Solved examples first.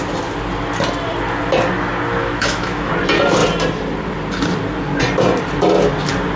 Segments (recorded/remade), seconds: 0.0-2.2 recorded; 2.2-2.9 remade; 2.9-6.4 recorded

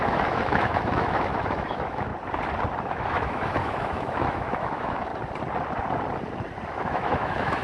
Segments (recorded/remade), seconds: 0.0-2.1 remade; 2.1-2.9 recorded; 2.9-5.1 remade; 5.1-6.7 recorded; 6.7-7.6 remade

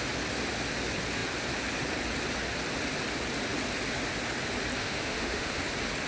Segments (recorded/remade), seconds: 0.0-4.8 recorded; 4.8-5.6 remade; 5.6-6.1 recorded

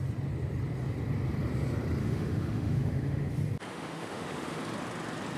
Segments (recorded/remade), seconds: 0.0-2.0 recorded; 2.0-3.3 remade; 3.3-3.7 recorded; 3.7-4.6 remade; 4.6-5.4 recorded